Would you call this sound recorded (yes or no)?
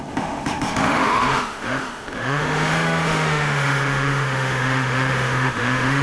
no